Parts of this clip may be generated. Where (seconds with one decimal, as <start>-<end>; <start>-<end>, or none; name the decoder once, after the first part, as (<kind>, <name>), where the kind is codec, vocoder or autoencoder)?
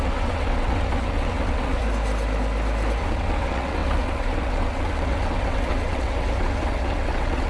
0.0-1.8 (vocoder, WaveNeXt); 3.0-7.5